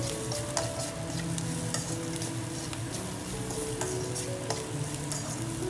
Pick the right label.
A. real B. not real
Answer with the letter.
A